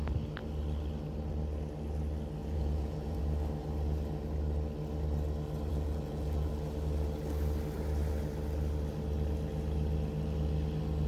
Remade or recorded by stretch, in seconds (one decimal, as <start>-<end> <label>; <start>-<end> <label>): 0.0-2.4 recorded; 2.4-3.2 remade; 3.2-5.7 recorded; 5.7-6.5 remade; 6.5-11.1 recorded